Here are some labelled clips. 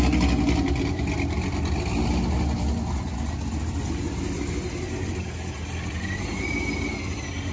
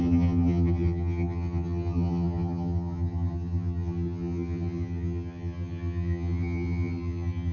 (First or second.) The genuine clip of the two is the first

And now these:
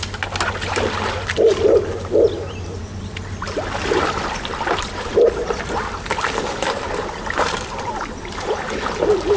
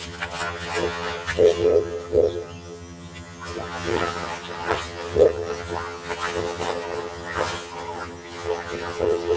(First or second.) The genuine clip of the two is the first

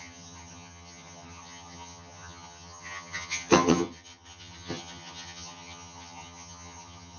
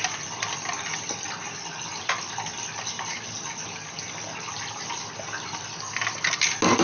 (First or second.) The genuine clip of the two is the second